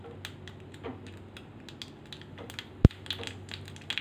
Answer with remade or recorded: recorded